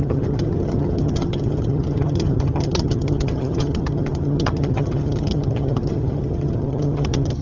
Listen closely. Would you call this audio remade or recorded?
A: remade